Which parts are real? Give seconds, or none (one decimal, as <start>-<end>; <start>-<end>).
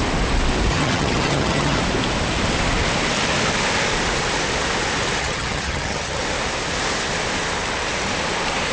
0.0-0.7; 1.8-5.2; 6.2-8.7